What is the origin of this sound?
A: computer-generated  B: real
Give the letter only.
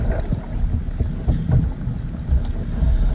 B